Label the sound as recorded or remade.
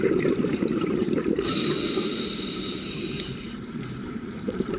remade